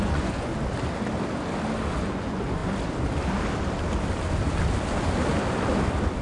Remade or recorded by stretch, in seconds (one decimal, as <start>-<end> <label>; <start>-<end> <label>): 0.0-0.5 remade; 0.5-2.0 recorded; 2.0-2.6 remade; 2.6-6.2 recorded